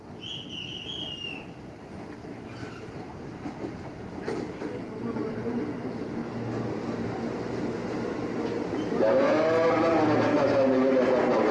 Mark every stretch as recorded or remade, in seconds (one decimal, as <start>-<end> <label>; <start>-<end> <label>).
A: 0.0-11.5 recorded